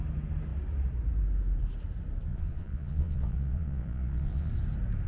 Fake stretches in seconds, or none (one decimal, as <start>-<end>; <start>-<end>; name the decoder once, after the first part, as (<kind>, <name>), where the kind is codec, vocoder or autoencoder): 2.3-4.5 (vocoder, Vocos)